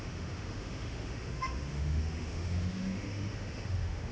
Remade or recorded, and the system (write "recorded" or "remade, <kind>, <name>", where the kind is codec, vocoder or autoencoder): remade, autoencoder, DAC-VAE